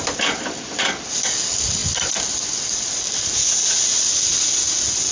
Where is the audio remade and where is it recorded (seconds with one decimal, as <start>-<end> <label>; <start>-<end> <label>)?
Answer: 0.0-5.1 recorded

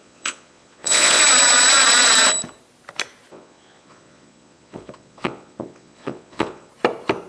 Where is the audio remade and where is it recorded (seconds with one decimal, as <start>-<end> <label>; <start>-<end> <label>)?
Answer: 0.0-1.2 remade; 1.2-3.3 recorded; 3.3-6.7 remade; 6.7-7.3 recorded